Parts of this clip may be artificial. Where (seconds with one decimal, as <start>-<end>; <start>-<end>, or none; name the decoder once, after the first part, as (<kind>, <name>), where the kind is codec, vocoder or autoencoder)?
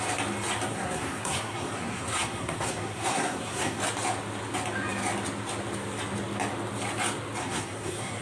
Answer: 0.7-3.8 (codec, SNAC); 7.4-8.2